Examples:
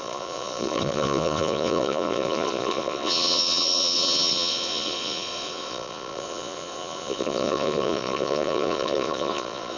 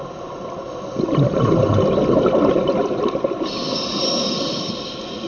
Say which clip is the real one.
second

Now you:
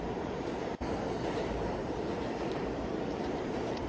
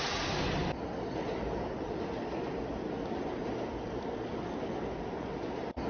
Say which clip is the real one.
second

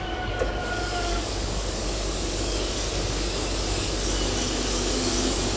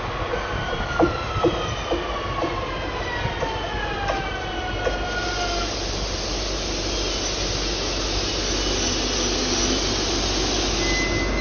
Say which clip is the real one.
second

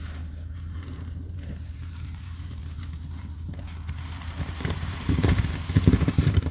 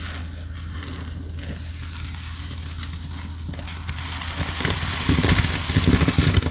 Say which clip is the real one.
second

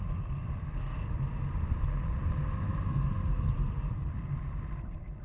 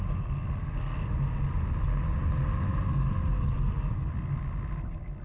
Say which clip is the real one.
second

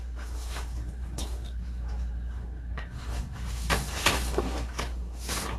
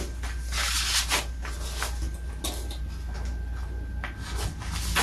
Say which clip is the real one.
second